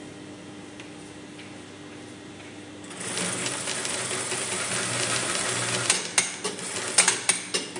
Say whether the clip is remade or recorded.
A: recorded